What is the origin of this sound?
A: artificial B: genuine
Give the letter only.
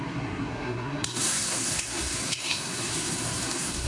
A